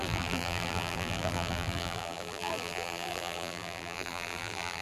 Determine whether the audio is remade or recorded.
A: remade